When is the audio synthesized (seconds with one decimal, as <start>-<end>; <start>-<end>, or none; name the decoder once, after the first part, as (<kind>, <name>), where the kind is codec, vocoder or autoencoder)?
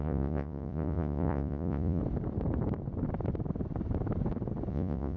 0.0-2.0 (vocoder, Vocos); 4.7-5.2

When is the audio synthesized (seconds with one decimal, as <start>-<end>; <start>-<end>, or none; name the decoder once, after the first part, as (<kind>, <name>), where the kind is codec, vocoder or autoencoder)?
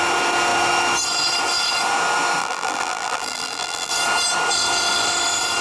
2.4-3.9 (vocoder, BigVGAN v2)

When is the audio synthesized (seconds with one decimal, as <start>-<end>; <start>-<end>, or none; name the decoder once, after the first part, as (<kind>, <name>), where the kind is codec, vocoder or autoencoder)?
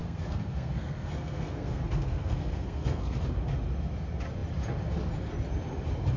0.0-3.2 (codec, SNAC)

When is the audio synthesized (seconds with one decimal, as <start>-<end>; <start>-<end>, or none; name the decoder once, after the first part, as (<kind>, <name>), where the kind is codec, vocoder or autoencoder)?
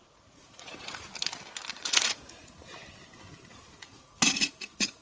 0.0-1.1 (vocoder, Vocos); 1.7-2.6; 3.5-5.0